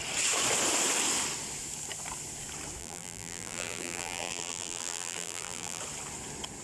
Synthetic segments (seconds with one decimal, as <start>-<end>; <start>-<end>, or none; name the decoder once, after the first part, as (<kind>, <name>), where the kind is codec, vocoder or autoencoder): 2.8-5.8 (vocoder, BigVGAN v2)